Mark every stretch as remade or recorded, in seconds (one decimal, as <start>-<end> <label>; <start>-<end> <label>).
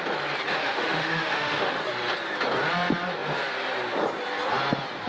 0.0-0.6 recorded; 0.6-1.8 remade; 1.8-5.1 recorded